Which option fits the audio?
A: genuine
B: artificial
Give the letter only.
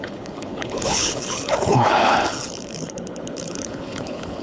B